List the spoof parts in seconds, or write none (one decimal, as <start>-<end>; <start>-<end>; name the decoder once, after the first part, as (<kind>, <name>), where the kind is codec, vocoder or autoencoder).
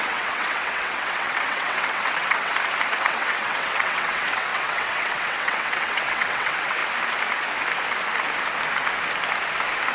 0.0-2.5 (vocoder, WaveNeXt); 3.0-6.8